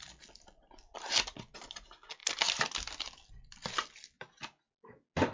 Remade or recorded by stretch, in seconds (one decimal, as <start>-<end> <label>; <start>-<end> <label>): 0.0-5.3 recorded